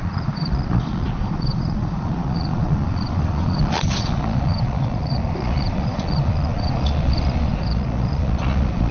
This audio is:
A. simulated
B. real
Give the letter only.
A